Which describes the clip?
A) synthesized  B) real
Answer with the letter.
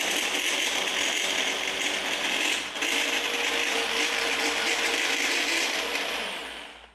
B